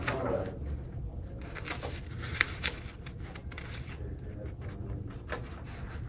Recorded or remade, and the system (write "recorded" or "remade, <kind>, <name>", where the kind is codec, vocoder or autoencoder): recorded